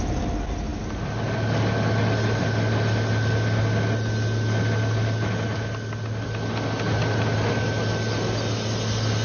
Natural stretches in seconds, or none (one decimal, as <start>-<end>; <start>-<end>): 0.0-9.2